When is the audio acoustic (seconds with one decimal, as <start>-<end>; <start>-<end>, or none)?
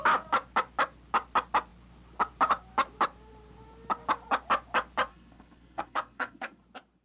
0.0-5.1; 6.6-7.0